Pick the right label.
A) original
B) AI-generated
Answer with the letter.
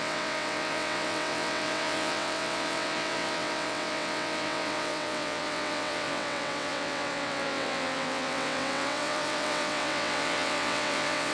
B